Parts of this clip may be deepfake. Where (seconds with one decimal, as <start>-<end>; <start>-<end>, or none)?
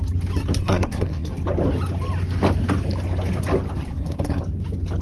0.6-1.3; 3.9-4.4